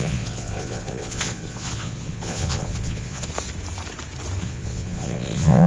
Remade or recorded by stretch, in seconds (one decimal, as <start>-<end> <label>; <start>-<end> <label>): 0.0-3.3 remade; 3.3-4.4 recorded; 4.4-5.7 remade